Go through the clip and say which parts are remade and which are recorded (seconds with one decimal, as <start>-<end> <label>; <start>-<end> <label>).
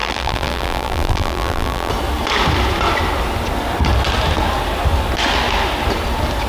0.0-1.9 remade; 1.9-6.5 recorded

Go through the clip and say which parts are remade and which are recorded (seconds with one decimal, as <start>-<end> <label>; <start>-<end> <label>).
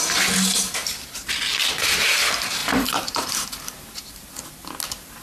0.0-2.6 recorded; 2.6-4.2 remade; 4.2-5.2 recorded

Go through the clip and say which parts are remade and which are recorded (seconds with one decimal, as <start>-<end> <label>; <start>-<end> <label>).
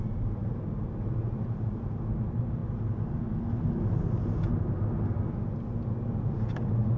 0.0-0.4 recorded; 0.4-1.9 remade; 1.9-7.0 recorded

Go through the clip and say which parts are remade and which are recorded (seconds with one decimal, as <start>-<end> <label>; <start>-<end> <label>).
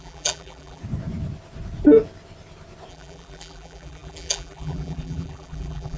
0.0-0.8 remade; 0.8-2.9 recorded; 2.9-6.0 remade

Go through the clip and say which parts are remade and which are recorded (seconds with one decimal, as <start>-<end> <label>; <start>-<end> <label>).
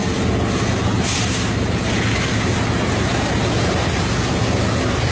0.0-5.1 recorded